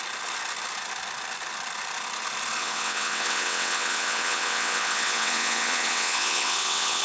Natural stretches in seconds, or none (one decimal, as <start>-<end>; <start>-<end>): 0.0-2.6